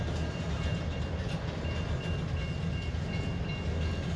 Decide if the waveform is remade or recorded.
recorded